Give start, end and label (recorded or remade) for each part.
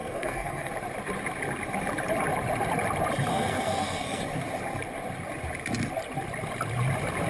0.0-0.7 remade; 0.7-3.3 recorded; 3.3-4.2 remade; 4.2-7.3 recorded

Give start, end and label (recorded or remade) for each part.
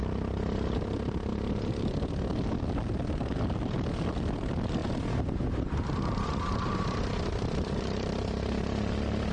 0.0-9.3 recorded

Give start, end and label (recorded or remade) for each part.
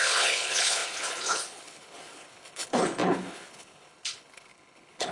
0.0-5.1 remade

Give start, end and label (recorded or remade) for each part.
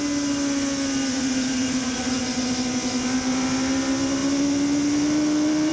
0.0-1.1 recorded; 1.1-2.1 remade; 2.1-5.7 recorded